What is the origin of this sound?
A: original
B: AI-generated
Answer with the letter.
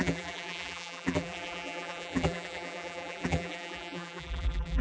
B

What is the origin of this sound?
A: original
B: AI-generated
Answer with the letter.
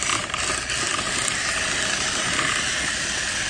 A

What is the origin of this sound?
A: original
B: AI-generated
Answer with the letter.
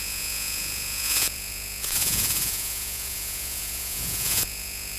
B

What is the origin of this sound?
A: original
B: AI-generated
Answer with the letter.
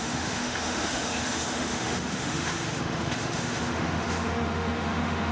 B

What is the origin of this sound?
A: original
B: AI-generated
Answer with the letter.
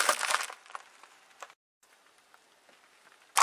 A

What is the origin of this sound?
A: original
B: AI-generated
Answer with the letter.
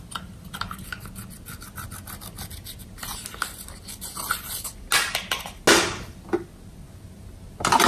A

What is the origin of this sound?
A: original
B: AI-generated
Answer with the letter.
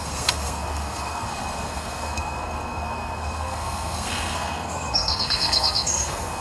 B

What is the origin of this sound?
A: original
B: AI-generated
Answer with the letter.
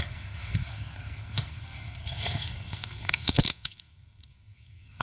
B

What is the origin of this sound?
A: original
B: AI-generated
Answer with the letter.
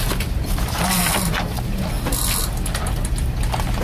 A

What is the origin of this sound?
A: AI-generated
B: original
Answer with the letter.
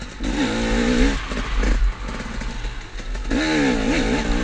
B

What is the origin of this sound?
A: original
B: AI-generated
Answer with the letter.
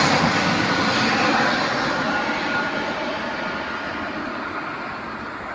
A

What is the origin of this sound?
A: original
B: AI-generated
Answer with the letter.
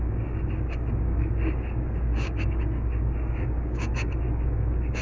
B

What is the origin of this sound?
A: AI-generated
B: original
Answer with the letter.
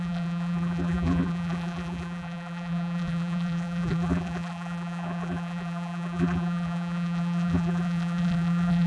A